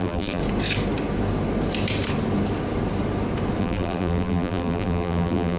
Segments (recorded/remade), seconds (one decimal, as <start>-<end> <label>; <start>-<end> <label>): 0.0-0.4 remade; 0.4-3.6 recorded; 3.6-5.6 remade